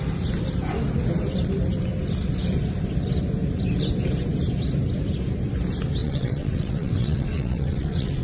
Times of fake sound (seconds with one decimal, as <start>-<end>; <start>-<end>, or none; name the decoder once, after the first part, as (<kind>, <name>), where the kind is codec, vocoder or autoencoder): 6.0-8.2 (vocoder, WaveNeXt)